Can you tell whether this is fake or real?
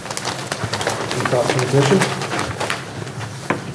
real